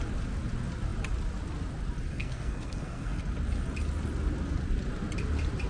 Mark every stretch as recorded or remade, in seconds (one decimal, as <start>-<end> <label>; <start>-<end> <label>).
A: 0.0-2.1 recorded; 2.1-3.2 remade; 3.2-5.7 recorded